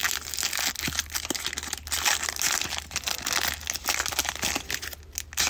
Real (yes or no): yes